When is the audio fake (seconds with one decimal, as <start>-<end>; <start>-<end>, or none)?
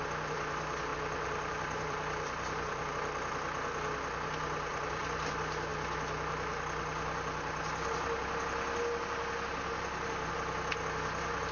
0.9-2.9; 4.7-5.3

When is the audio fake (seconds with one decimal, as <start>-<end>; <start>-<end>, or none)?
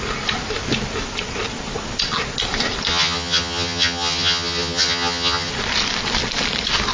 2.9-5.5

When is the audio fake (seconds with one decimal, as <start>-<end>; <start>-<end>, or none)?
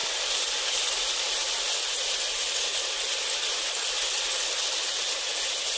none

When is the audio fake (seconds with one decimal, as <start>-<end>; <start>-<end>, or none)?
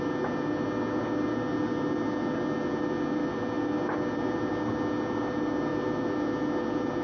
none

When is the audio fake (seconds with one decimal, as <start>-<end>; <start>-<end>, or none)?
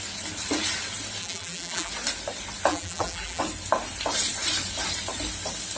1.2-1.9; 2.7-3.4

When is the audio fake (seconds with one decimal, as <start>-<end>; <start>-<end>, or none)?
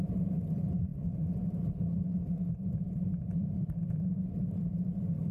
0.0-3.6; 4.5-5.3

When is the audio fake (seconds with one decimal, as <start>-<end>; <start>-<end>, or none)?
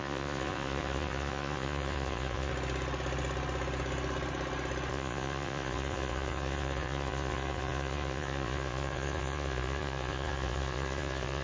0.0-2.5; 4.9-11.4